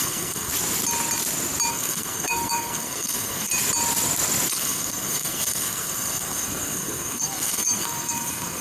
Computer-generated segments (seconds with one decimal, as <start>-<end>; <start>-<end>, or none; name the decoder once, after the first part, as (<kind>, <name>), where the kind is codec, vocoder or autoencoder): 0.0-0.5 (codec, SNAC); 1.7-3.5; 4.5-8.6